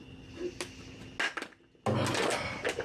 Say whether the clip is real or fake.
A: real